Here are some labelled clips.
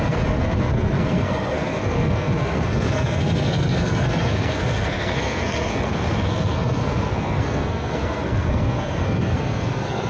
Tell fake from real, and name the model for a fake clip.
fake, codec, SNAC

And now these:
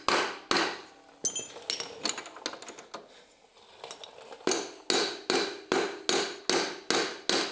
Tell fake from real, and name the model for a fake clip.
real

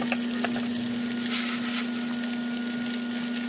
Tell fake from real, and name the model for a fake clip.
real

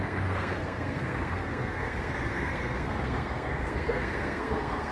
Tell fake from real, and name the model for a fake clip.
fake, codec, SNAC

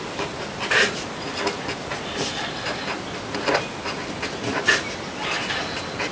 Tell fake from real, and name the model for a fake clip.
real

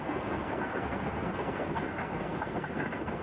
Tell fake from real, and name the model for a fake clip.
fake, codec, SNAC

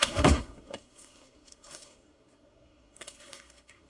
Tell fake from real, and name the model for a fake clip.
fake, codec, SNAC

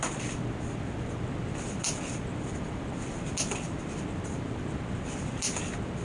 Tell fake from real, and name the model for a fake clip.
real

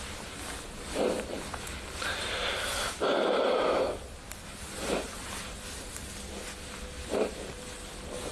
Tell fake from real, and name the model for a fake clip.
real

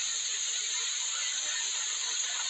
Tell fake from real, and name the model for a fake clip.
real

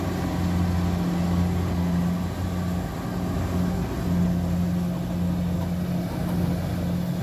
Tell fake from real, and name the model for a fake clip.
real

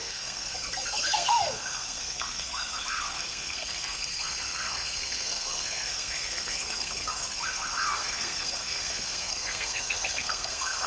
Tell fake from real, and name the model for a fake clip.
fake, codec, SNAC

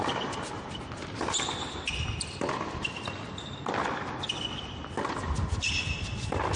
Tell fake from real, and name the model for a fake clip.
real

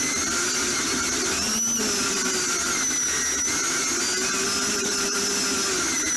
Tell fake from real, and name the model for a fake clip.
real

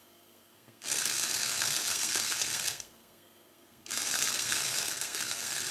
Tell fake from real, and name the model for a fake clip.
fake, codec, SNAC